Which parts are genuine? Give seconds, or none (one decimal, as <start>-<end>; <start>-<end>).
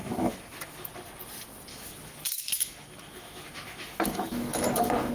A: 0.9-1.7